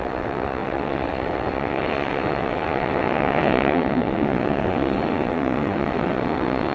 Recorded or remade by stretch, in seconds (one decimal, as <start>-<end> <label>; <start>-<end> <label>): 0.0-6.7 remade